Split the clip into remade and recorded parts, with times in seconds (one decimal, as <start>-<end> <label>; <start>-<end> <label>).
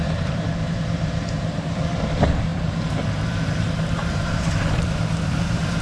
0.0-5.8 remade